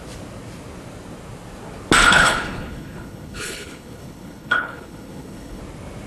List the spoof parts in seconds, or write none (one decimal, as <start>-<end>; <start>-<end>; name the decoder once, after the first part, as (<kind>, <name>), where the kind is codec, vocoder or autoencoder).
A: 2.0-5.6 (codec, HILCodec)